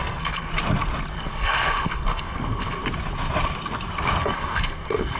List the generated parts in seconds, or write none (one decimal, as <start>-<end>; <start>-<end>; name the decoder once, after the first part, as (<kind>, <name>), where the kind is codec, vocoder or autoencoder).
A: 0.0-0.5 (codec, SNAC); 1.1-2.8; 4.2-5.2